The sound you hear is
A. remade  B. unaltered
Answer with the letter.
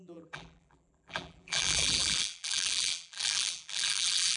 A